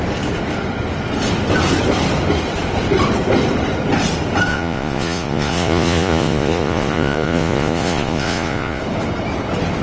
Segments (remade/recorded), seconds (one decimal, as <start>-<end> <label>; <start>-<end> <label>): 0.0-4.5 recorded; 4.5-8.8 remade; 8.8-9.8 recorded